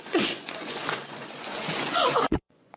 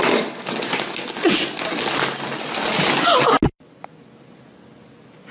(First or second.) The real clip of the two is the second